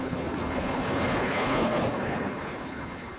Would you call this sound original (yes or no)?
no